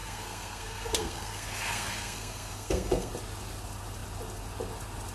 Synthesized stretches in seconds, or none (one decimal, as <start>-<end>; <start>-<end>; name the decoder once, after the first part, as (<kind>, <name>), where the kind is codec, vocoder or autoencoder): 0.0-3.1 (codec, SNAC)